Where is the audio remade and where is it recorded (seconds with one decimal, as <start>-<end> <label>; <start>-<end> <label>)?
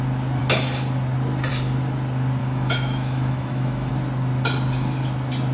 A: 0.0-2.4 recorded; 2.4-3.9 remade; 3.9-5.5 recorded